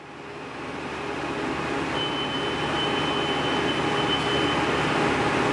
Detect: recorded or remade recorded